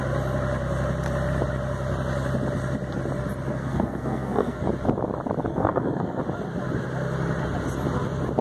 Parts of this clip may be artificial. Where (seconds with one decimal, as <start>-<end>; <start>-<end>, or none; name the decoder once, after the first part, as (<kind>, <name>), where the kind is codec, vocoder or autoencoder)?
3.5-4.6 (codec, SNAC); 5.5-6.2